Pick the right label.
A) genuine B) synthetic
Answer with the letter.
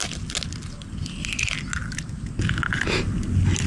A